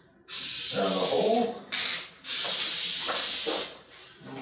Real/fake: real